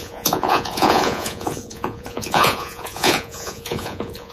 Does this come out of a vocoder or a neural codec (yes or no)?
yes